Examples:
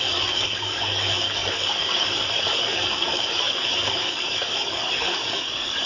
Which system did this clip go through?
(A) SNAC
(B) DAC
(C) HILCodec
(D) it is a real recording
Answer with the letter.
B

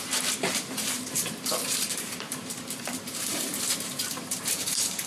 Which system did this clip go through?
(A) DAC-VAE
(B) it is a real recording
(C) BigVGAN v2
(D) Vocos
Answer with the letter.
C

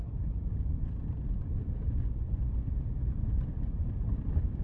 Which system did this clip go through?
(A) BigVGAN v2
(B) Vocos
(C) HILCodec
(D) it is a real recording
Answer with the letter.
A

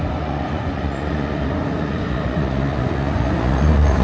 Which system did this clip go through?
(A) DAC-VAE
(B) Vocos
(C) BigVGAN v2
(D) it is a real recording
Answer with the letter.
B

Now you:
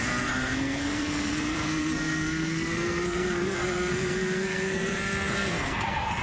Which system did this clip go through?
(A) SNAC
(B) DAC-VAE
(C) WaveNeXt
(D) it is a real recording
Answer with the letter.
A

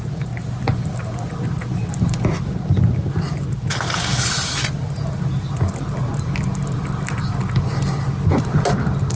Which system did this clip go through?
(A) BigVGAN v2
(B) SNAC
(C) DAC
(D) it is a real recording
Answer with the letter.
D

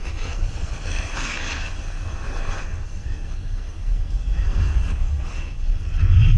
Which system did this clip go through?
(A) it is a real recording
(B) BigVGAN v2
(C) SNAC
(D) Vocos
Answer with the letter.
C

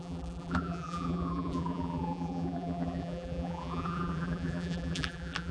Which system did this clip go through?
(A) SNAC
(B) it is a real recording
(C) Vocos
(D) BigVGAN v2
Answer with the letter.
D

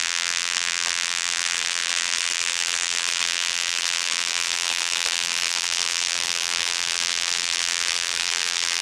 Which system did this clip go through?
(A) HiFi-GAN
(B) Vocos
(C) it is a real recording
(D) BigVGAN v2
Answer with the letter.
D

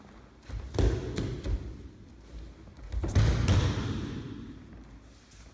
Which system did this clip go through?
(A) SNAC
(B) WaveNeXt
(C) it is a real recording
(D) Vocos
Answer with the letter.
C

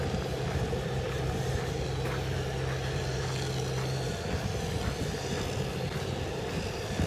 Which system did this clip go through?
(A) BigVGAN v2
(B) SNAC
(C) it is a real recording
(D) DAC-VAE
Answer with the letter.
C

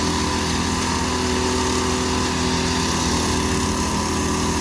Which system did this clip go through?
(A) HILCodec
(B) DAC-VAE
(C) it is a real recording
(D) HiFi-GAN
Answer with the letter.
C